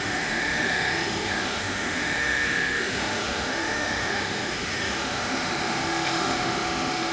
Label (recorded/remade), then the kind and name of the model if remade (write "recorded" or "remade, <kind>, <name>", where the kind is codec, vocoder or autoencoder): remade, autoencoder, DAC-VAE